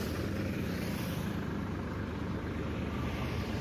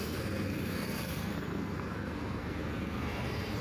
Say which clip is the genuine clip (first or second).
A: first